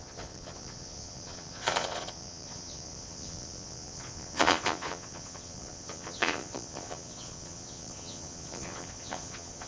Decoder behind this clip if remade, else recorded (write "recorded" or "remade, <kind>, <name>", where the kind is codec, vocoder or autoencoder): remade, vocoder, Vocos